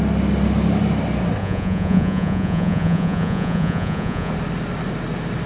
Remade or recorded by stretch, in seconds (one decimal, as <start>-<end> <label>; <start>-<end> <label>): 0.0-1.4 recorded; 1.4-4.3 remade; 4.3-5.5 recorded